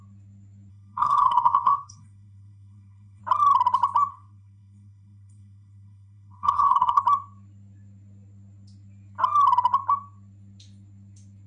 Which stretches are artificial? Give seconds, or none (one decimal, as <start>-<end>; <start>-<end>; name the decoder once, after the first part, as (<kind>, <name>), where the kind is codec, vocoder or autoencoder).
0.7-3.2 (codec, SNAC); 4.1-7.0

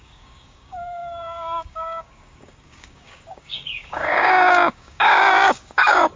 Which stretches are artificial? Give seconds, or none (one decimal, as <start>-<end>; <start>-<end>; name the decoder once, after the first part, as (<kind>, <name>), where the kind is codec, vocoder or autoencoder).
0.0-6.2 (codec, DAC)